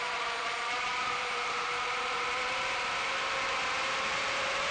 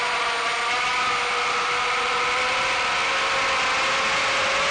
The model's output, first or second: first